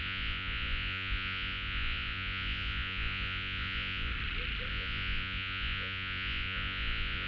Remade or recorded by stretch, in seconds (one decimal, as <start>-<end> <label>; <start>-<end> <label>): 0.0-4.1 remade; 4.1-4.7 recorded; 4.7-7.3 remade